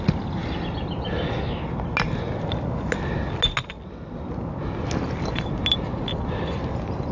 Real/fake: real